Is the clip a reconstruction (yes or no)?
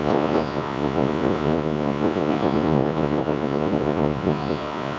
yes